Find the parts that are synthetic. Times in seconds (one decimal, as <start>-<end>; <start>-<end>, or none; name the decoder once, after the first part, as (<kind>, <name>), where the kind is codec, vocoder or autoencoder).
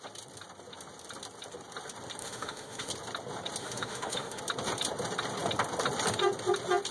2.2-2.9 (autoencoder, DAC-VAE); 3.6-4.4